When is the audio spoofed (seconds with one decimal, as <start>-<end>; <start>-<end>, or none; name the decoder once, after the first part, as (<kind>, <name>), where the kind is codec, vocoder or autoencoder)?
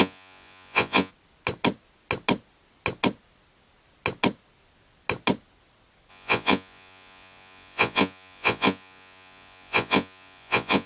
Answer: 0.0-1.1 (vocoder, Vocos); 6.1-10.9